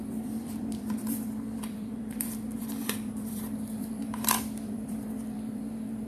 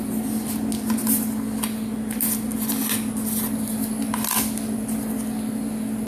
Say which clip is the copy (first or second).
first